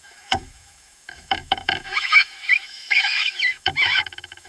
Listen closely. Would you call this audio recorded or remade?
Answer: remade